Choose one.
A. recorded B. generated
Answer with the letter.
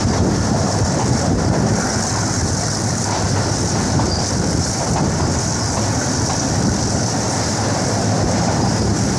B